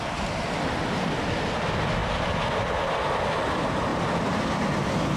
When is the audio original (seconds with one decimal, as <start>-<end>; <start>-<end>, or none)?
0.0-5.2